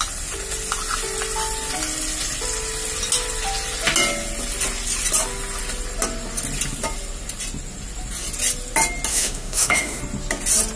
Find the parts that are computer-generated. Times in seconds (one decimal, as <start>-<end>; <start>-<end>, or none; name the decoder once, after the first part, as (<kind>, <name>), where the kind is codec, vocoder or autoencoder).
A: 9.1-10.0 (autoencoder, DAC-VAE)